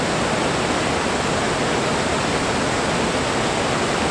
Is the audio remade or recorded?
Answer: recorded